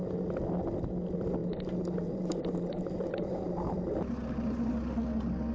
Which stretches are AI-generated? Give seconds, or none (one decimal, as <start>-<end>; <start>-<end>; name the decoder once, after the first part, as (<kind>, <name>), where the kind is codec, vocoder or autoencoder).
none